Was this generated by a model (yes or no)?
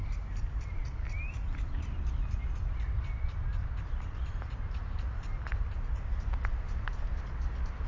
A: no